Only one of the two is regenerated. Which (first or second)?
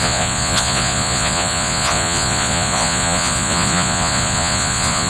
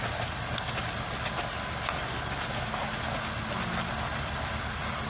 first